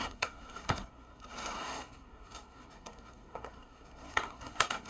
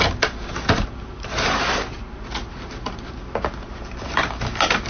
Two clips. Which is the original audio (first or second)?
second